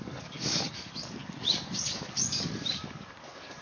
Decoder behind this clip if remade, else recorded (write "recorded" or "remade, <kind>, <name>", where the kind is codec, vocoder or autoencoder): remade, codec, DAC